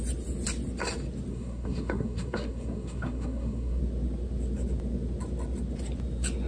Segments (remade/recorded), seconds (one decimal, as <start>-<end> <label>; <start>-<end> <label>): 0.0-1.3 recorded; 1.3-3.8 remade; 3.8-6.5 recorded

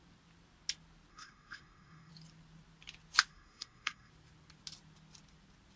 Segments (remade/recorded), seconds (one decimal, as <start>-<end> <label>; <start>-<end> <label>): 0.0-1.1 recorded; 1.1-2.1 remade; 2.1-3.3 recorded; 3.3-4.1 remade; 4.1-5.8 recorded